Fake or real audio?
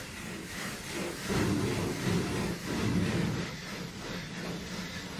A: real